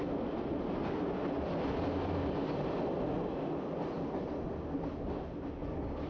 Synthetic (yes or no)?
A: no